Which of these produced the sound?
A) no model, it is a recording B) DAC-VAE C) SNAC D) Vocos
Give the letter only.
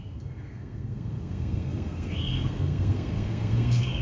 C